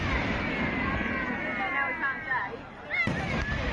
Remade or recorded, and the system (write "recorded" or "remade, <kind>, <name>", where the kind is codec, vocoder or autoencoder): recorded